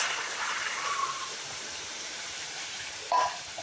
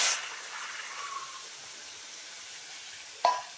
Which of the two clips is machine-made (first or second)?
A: first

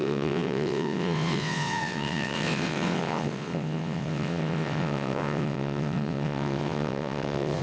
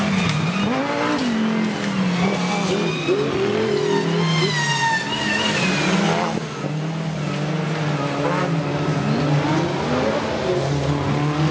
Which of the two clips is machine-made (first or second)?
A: first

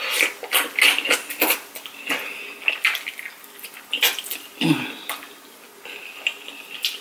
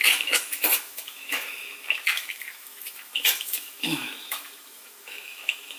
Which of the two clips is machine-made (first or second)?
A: second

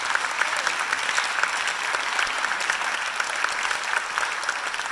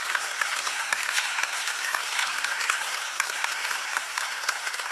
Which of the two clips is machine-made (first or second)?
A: second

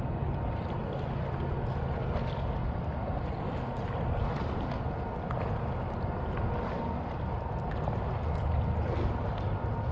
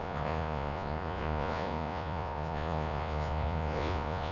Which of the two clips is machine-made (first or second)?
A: second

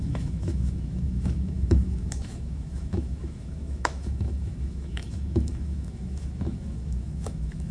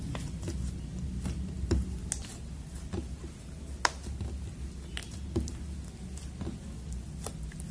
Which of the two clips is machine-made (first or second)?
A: first